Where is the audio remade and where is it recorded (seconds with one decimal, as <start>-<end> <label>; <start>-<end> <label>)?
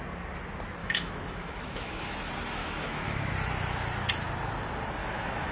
0.0-0.8 recorded; 0.8-2.2 remade; 2.2-2.6 recorded; 2.6-3.3 remade; 3.3-5.0 recorded; 5.0-5.5 remade